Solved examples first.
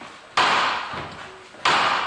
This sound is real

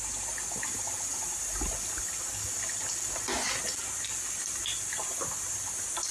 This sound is real